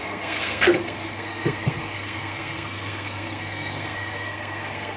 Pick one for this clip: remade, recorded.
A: remade